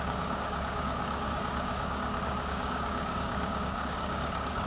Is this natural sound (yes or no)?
no